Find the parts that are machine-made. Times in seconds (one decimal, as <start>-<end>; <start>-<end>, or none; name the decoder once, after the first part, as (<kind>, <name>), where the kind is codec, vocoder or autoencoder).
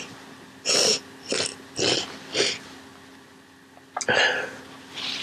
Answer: none